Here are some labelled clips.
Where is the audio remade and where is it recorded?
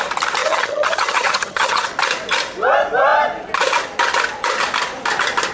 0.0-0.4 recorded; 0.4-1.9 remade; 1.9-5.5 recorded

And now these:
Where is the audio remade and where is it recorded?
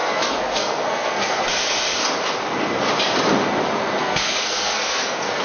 0.0-1.4 remade; 1.4-4.0 recorded; 4.0-5.4 remade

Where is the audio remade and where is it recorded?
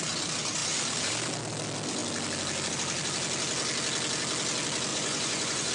0.0-4.9 recorded; 4.9-5.7 remade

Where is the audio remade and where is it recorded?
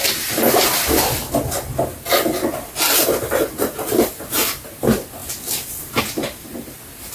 0.0-7.1 recorded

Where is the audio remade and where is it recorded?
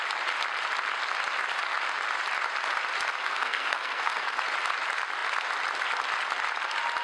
0.0-3.2 recorded; 3.2-4.4 remade; 4.4-7.0 recorded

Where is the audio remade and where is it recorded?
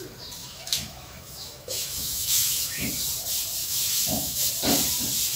0.0-0.4 recorded; 0.4-2.9 remade; 2.9-3.6 recorded; 3.6-4.5 remade; 4.5-5.4 recorded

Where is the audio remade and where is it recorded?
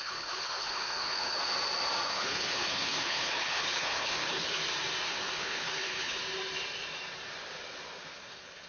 0.0-1.4 remade; 1.4-2.1 recorded; 2.1-4.6 remade; 4.6-5.1 recorded; 5.1-6.2 remade; 6.2-8.1 recorded; 8.1-8.7 remade